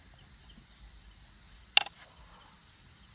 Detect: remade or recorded recorded